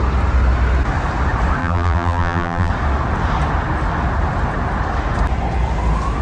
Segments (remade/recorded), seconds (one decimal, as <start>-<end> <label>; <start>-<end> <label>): 0.0-1.6 recorded; 1.6-2.7 remade; 2.7-6.2 recorded